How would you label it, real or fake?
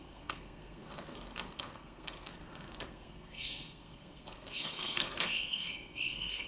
fake